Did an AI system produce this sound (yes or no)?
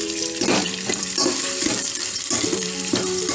yes